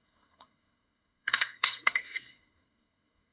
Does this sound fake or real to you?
fake